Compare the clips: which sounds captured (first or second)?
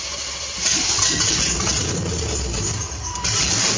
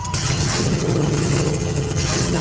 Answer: first